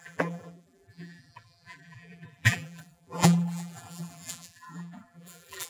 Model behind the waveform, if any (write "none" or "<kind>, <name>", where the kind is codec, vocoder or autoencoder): vocoder, BigVGAN v2